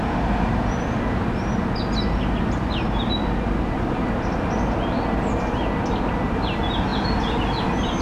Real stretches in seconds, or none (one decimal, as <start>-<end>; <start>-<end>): 0.0-8.0